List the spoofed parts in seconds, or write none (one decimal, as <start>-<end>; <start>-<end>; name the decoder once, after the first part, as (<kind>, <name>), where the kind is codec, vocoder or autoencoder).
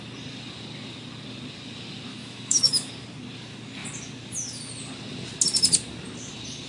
2.1-2.9 (autoencoder, DAC-VAE)